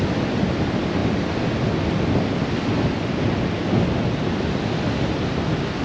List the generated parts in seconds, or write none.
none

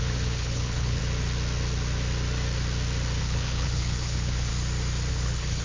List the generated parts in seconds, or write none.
0.0-1.0; 3.2-4.5; 5.1-5.6

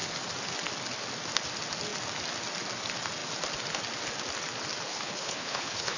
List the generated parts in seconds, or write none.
4.9-6.0